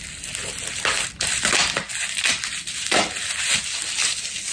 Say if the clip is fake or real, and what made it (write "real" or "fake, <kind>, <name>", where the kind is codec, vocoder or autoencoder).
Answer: real